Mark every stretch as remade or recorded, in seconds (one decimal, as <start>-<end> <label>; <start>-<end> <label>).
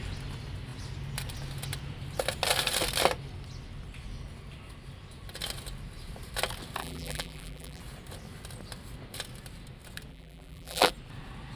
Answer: 0.0-6.8 recorded; 6.8-7.8 remade; 7.8-10.1 recorded; 10.1-10.9 remade; 10.9-11.6 recorded